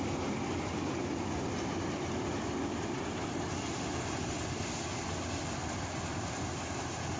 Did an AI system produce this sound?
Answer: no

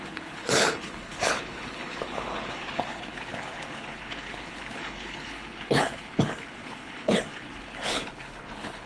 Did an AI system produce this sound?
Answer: yes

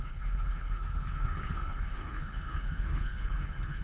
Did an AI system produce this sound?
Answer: yes